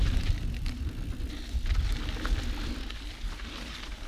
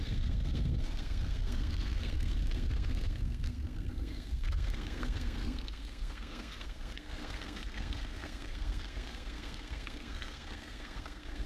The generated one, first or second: second